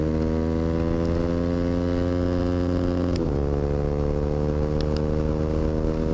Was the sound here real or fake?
real